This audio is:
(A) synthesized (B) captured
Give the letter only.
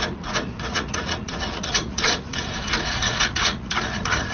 A